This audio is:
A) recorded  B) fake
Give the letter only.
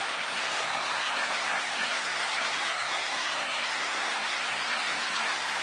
B